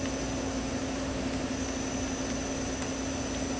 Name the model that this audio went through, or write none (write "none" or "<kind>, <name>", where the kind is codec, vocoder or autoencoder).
none